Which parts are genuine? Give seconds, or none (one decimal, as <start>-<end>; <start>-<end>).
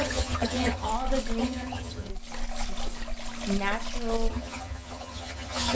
0.9-1.4; 2.1-4.3